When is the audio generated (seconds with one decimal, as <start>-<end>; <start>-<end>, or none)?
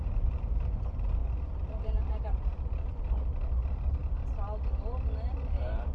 0.0-1.2; 1.8-4.0; 5.4-5.9